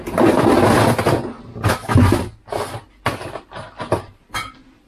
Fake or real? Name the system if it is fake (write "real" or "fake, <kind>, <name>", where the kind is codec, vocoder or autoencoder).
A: real